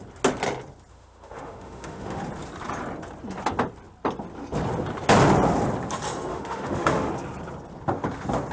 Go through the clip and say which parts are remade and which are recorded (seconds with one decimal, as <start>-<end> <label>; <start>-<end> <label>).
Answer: 0.0-0.9 recorded; 0.9-2.2 remade; 2.2-6.3 recorded; 6.3-7.1 remade; 7.1-8.5 recorded